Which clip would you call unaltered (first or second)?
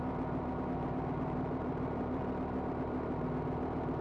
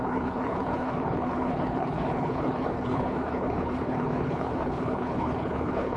first